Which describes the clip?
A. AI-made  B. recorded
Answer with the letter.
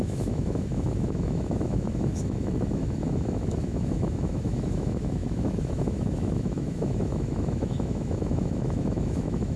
A